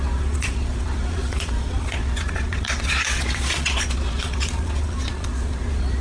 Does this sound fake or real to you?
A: fake